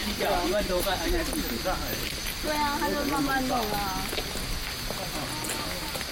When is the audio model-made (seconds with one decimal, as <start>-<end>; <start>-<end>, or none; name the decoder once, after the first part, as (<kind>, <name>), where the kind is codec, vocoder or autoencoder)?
0.0-1.1 (vocoder, BigVGAN v2)